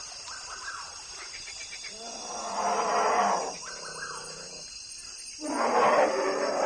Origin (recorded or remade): recorded